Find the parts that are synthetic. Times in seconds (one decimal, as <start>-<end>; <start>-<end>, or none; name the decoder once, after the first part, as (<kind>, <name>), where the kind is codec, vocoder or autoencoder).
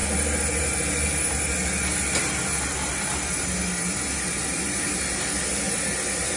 none